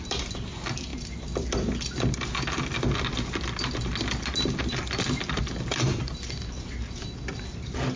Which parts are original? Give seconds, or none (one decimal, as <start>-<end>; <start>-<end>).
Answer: 0.0-8.0